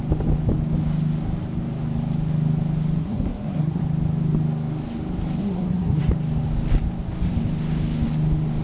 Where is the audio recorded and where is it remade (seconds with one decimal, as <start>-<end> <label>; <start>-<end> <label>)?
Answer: 0.0-3.0 recorded; 3.0-3.8 remade; 3.8-5.4 recorded; 5.4-6.0 remade; 6.0-8.6 recorded